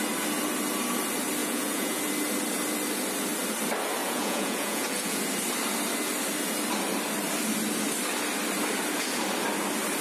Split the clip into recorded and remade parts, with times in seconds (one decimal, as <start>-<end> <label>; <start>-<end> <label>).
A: 0.0-1.4 recorded; 1.4-2.0 remade; 2.0-4.0 recorded; 4.0-5.2 remade; 5.2-10.0 recorded